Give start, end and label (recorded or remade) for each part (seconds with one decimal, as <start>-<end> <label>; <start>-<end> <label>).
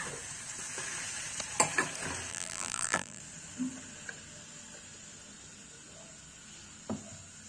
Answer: 0.0-2.3 recorded; 2.3-3.2 remade; 3.2-7.5 recorded